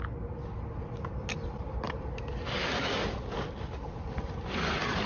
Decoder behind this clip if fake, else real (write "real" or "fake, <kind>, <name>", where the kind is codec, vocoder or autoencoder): real